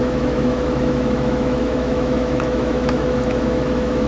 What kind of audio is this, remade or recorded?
remade